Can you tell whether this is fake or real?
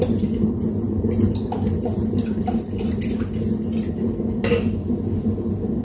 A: real